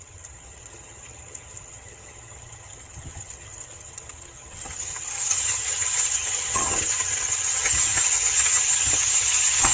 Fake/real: fake